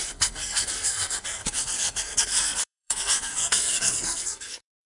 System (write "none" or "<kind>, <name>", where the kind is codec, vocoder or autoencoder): codec, SNAC